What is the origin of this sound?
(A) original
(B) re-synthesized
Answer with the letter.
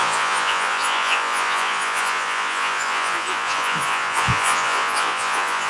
B